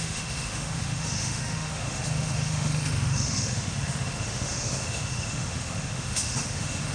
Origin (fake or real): fake